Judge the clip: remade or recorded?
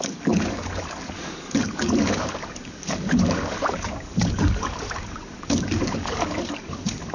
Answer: remade